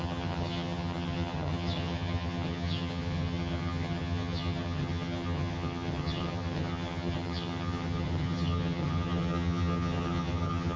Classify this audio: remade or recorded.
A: remade